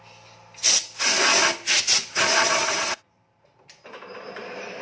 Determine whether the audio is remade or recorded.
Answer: recorded